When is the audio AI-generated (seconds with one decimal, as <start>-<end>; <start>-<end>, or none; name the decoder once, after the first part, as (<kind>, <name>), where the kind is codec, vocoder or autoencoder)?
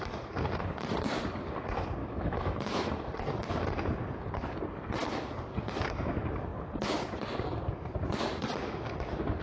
2.0-2.9 (autoencoder, DAC-VAE)